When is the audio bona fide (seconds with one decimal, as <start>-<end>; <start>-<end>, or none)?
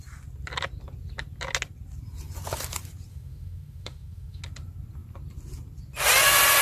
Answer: 0.0-3.1; 4.4-6.6